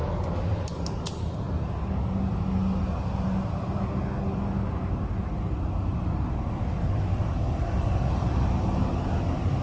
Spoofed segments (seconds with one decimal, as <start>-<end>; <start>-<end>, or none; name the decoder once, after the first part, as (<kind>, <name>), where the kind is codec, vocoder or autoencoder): none